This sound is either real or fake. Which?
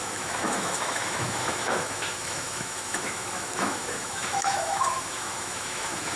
fake